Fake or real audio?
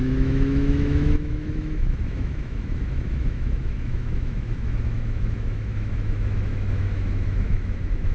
fake